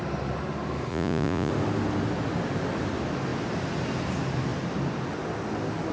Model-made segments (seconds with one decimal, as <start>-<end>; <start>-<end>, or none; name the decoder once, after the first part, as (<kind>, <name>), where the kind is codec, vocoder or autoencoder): 0.9-1.5 (vocoder, Vocos)